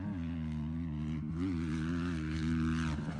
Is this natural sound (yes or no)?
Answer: yes